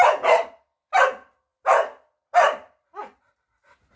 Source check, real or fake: real